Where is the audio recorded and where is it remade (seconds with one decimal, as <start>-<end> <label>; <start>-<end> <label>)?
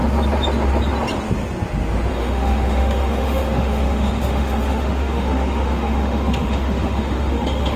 0.0-2.1 recorded; 2.1-7.8 remade